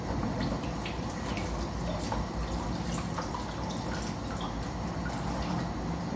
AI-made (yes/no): no